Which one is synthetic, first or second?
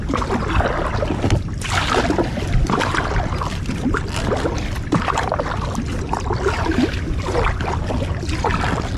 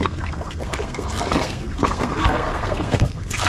second